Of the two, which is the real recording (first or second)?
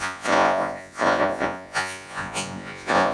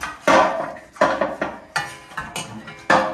second